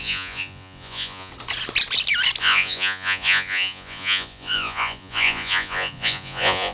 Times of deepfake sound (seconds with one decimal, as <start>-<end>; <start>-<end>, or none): 0.0-1.3; 2.4-6.7